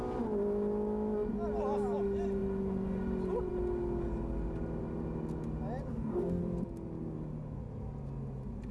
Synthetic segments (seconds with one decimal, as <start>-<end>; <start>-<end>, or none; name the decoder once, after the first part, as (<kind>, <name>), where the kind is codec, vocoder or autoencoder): 5.9-6.4 (codec, DAC)